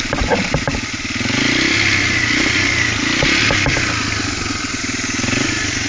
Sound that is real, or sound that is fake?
real